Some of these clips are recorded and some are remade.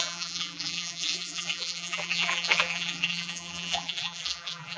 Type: remade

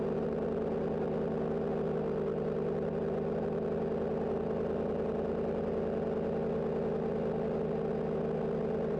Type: recorded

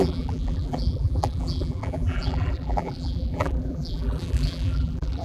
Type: remade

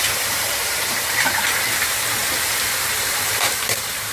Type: remade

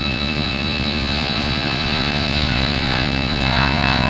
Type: remade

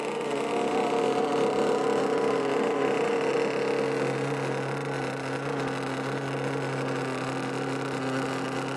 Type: recorded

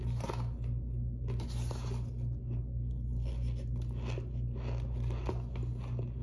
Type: recorded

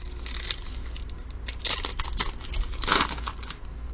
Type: recorded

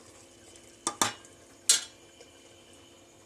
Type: recorded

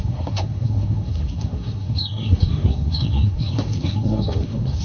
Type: remade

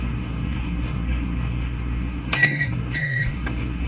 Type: remade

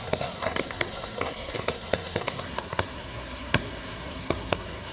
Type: remade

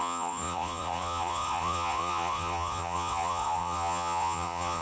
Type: remade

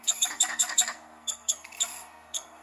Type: remade